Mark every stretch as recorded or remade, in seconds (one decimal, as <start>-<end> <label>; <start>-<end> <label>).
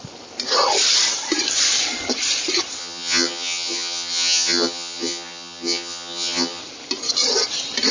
0.0-2.8 recorded; 2.8-6.6 remade; 6.6-7.9 recorded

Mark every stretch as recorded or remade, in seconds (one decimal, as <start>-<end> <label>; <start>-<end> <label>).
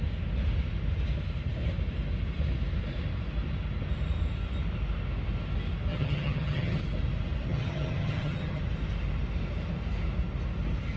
0.0-5.9 recorded; 5.9-6.8 remade; 6.8-7.5 recorded; 7.5-8.6 remade; 8.6-11.0 recorded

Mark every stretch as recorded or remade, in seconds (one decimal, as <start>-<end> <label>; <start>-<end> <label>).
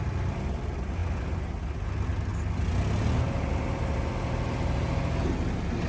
0.0-5.9 recorded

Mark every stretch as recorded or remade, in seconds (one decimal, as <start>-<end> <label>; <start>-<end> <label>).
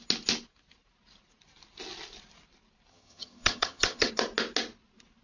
0.0-2.9 recorded; 2.9-4.1 remade; 4.1-5.2 recorded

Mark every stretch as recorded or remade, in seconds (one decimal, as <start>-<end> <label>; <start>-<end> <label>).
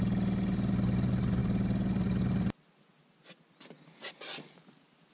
0.0-5.1 recorded